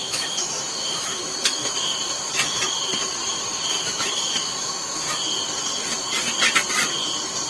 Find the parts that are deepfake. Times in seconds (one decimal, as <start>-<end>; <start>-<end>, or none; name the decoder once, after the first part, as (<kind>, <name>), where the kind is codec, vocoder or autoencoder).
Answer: 0.0-2.3 (autoencoder, DAC-VAE); 3.7-5.0